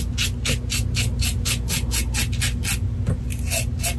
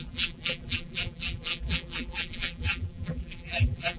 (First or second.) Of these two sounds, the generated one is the second